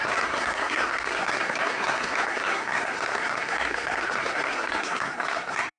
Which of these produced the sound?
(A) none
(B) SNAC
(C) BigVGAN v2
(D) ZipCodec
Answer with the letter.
B